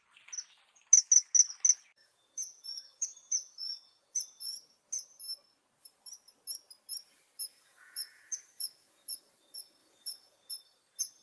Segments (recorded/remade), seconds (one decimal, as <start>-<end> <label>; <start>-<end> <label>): 0.0-2.0 recorded; 2.0-4.8 remade; 4.8-7.5 recorded; 7.5-9.2 remade; 9.2-9.8 recorded; 9.8-10.5 remade; 10.5-11.2 recorded